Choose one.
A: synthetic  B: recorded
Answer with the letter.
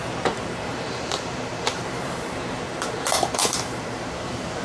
A